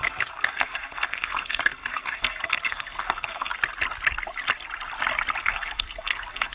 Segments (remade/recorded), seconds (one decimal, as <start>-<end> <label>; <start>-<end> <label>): 0.0-3.5 remade; 3.5-5.4 recorded; 5.4-6.5 remade